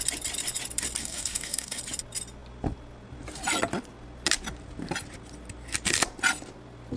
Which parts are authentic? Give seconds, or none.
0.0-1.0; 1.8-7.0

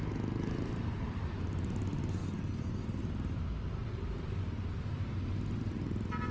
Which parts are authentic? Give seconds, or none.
0.0-6.3

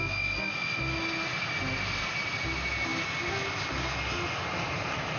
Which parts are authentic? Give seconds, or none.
0.0-5.2

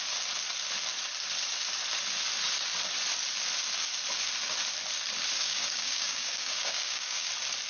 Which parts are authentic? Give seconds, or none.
0.0-5.4; 7.3-7.7

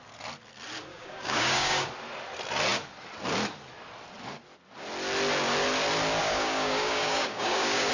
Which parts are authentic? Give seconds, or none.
0.0-0.9; 1.9-6.2

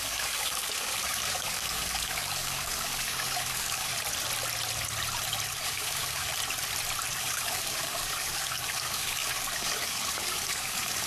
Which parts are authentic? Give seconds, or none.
3.9-5.5; 6.3-7.2